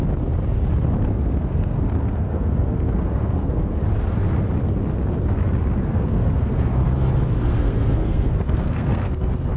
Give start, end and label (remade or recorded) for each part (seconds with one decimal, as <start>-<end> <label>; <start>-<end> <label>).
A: 0.0-1.1 recorded; 1.1-3.8 remade; 3.8-5.8 recorded; 5.8-6.7 remade; 6.7-7.5 recorded; 7.5-9.6 remade